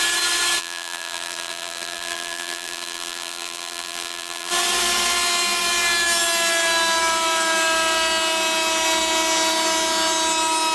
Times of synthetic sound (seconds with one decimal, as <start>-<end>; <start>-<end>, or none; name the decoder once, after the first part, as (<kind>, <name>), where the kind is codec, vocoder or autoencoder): 0.6-4.5 (vocoder, BigVGAN v2)